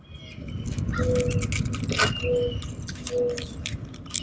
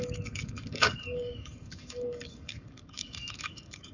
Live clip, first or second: first